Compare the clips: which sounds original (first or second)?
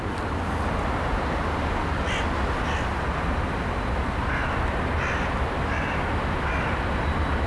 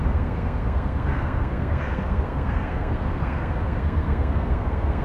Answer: first